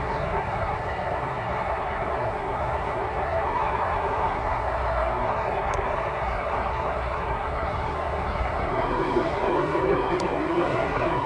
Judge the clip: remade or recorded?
remade